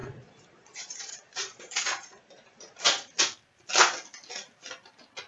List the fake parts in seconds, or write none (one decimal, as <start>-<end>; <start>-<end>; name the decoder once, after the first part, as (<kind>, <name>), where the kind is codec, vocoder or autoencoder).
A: 0.0-3.2 (vocoder, Vocos)